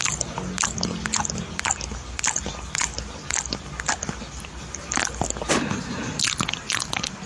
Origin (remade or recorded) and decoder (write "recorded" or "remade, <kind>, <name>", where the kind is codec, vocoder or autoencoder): recorded